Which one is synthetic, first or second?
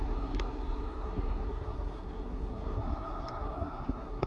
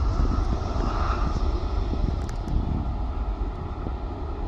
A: first